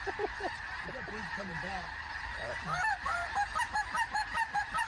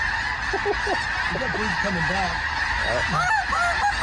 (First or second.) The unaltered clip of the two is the second